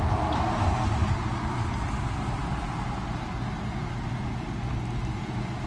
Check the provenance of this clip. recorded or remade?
recorded